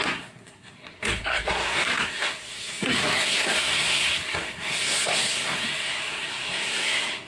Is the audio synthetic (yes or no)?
yes